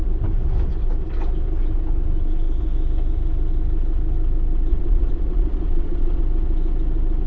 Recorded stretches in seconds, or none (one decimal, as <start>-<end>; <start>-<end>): 0.0-4.7; 6.2-7.3